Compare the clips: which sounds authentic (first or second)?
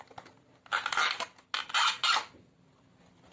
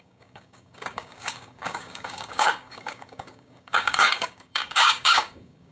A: first